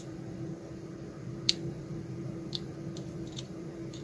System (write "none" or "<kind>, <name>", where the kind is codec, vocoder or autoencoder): vocoder, BigVGAN v2